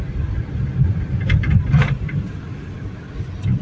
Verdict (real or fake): fake